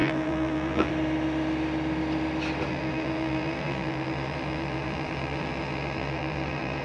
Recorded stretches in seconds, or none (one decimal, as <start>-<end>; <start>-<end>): 0.9-2.7